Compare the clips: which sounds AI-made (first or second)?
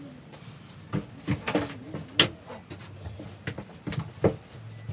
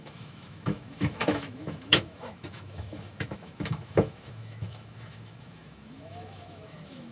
second